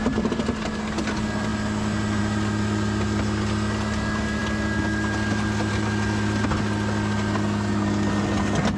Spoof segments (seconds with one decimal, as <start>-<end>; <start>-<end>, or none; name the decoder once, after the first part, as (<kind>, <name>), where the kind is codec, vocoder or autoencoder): none